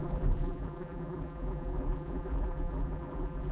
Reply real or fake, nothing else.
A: fake